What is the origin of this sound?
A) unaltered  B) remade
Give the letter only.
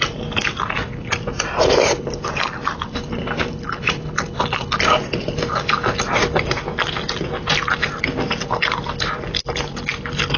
A